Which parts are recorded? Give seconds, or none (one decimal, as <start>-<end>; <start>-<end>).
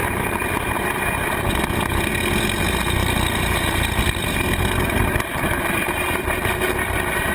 0.0-3.0; 5.2-7.3